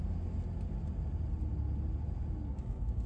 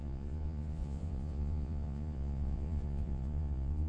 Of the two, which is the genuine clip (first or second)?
first